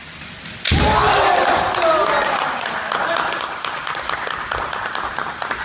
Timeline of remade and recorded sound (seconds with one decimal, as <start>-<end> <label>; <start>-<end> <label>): 0.0-5.6 recorded